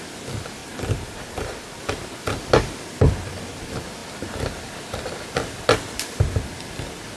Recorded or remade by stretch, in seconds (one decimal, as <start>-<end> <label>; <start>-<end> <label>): 0.0-0.6 recorded; 0.6-1.8 remade; 1.8-7.2 recorded